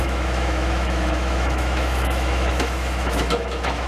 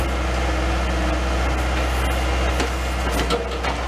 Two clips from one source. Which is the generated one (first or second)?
first